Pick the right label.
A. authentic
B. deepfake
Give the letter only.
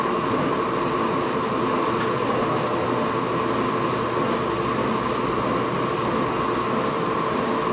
A